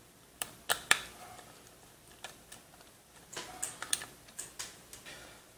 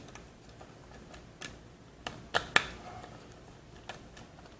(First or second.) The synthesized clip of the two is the first